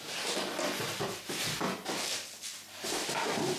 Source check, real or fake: real